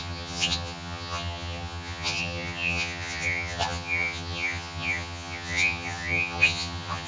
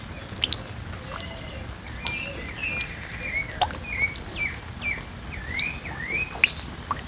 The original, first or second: second